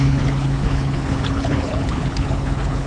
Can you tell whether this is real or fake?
fake